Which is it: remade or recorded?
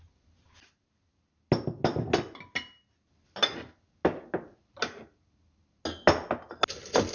recorded